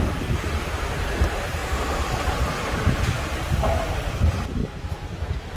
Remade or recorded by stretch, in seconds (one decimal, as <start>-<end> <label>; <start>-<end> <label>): 0.0-1.6 recorded; 1.6-3.0 remade; 3.0-4.6 recorded; 4.6-5.6 remade

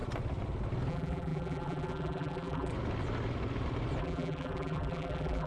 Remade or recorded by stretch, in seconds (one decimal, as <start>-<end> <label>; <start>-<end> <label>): 0.0-0.9 recorded; 0.9-2.7 remade; 2.7-4.0 recorded; 4.0-5.5 remade

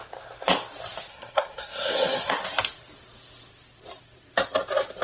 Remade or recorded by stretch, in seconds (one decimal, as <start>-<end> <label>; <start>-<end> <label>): 0.0-1.1 recorded; 1.1-2.3 remade; 2.3-5.0 recorded

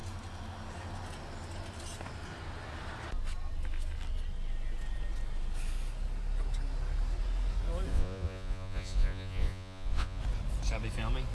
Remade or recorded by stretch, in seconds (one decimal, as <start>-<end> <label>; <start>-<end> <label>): 0.0-7.9 recorded; 7.9-10.2 remade; 10.2-11.3 recorded

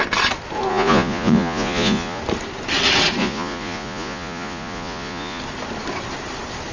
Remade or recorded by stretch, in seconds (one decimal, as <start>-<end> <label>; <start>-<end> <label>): 0.0-0.7 recorded; 0.7-2.2 remade; 2.2-3.2 recorded; 3.2-5.4 remade; 5.4-6.7 recorded

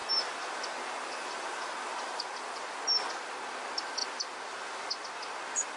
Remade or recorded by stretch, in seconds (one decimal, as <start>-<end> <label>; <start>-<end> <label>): 0.0-5.8 recorded

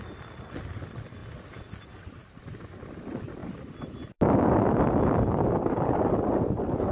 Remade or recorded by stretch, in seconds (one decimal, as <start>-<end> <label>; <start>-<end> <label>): 0.0-6.9 recorded